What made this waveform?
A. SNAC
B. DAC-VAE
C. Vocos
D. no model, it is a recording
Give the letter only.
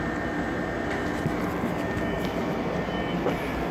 D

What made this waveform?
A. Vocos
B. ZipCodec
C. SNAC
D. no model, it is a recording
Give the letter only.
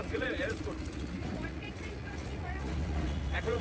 A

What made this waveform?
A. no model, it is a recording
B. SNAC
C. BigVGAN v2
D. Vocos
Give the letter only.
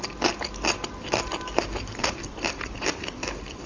A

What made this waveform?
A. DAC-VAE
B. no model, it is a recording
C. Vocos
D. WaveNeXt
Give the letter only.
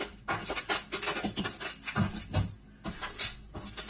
B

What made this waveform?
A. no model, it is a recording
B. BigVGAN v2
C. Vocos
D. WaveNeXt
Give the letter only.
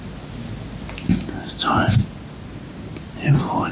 A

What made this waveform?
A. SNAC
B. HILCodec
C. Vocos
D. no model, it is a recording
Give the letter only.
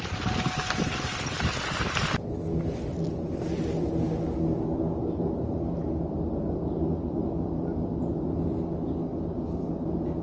D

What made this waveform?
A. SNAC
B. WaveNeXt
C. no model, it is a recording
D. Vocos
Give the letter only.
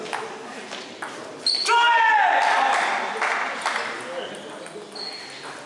C